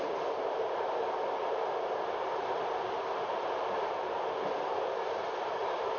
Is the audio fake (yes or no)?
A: no